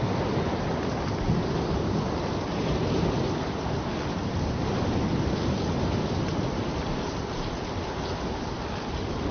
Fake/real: fake